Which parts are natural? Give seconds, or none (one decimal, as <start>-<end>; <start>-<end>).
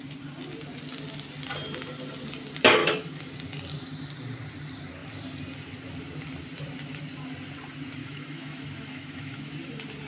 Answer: 0.0-2.8; 3.3-8.0; 9.5-10.1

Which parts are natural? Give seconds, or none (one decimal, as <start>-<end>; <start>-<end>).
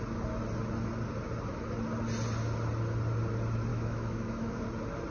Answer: 0.0-3.7; 4.6-5.1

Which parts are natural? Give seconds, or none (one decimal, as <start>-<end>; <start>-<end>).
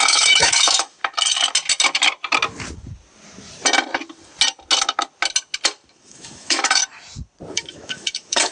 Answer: 1.0-5.9; 6.8-7.5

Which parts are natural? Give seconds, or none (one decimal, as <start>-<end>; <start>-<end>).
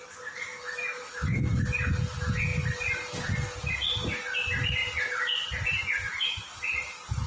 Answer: 0.0-0.5; 1.6-7.3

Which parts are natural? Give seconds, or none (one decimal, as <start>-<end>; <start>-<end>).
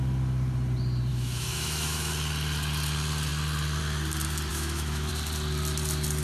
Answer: 0.0-1.1; 2.1-4.5; 5.1-6.2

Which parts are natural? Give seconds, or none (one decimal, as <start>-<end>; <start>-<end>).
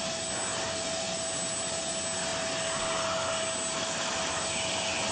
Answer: 0.0-3.8; 4.4-5.1